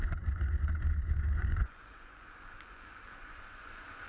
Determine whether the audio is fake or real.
fake